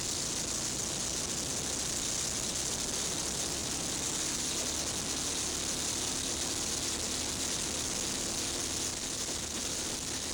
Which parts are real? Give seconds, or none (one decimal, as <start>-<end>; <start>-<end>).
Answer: 0.0-8.9